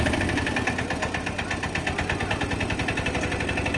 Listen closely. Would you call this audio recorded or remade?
recorded